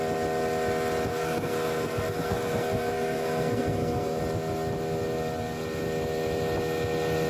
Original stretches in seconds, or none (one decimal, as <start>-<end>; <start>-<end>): 0.0-1.1; 4.2-7.3